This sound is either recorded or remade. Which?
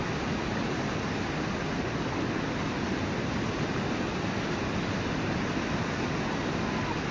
recorded